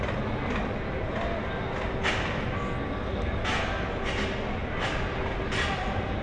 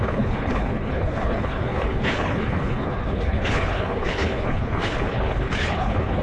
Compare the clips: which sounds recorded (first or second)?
first